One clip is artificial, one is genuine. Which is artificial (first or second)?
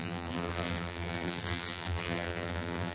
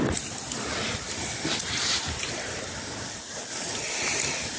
first